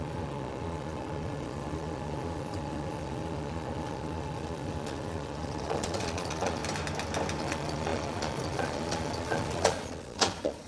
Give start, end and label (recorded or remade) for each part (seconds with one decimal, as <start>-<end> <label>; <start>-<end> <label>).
0.0-6.6 remade; 6.6-7.4 recorded; 7.4-10.7 remade